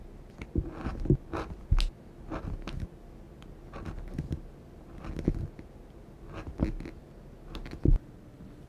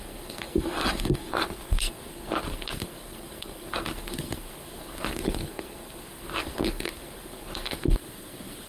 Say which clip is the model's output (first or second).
second